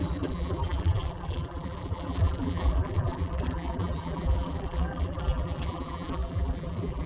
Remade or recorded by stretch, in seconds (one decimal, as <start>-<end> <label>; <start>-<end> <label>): 0.0-7.1 remade